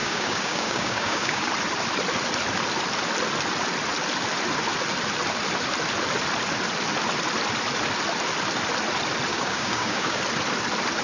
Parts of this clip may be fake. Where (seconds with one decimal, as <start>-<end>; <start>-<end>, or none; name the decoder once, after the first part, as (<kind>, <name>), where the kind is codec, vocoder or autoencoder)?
0.0-1.5 (codec, DAC); 9.3-10.2

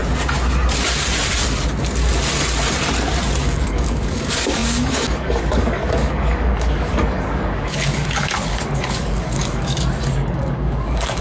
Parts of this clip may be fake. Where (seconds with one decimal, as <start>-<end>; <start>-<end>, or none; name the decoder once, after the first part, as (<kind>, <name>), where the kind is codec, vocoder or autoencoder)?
3.4-11.2 (codec, DAC)

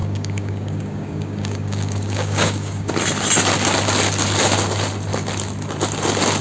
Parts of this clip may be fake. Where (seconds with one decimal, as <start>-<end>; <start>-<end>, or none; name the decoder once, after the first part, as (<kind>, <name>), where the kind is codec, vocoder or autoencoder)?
0.0-2.9 (codec, DAC)

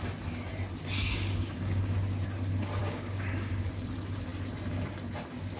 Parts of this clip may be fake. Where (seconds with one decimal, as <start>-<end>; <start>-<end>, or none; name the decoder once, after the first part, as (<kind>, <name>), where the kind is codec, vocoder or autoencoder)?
1.0-1.8 (codec, DAC); 2.8-3.5

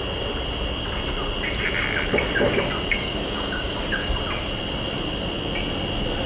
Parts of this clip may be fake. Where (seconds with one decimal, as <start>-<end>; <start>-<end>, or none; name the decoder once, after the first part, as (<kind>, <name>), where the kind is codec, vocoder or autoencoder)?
2.9-4.2 (codec, DAC)

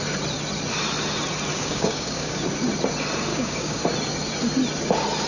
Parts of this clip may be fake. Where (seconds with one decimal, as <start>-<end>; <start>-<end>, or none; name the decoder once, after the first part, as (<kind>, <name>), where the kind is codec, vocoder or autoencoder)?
1.5-2.4 (codec, DAC); 3.3-3.8

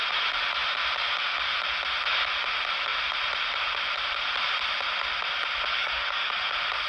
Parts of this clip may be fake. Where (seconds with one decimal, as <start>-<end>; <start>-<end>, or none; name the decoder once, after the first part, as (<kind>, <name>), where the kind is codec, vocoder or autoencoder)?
5.7-6.3 (codec, DAC)